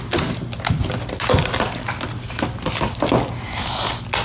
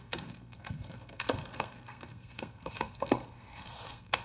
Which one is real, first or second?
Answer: first